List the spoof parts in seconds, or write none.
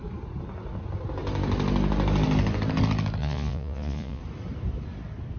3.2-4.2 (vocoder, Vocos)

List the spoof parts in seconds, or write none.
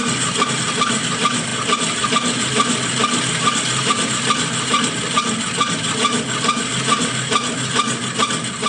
none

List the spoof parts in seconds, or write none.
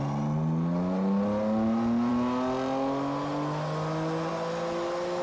none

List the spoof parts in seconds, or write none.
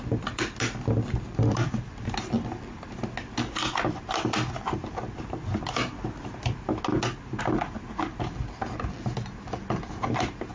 none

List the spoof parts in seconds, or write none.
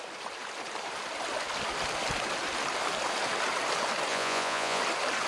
4.1-4.8 (vocoder, Vocos)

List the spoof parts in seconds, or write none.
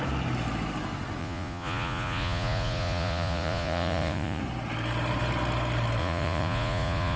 1.2-4.4 (vocoder, Vocos); 6.0-7.2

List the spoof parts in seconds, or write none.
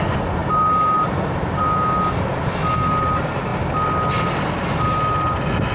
none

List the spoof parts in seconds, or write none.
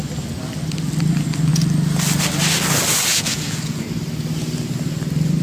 3.1-3.8 (vocoder, Vocos)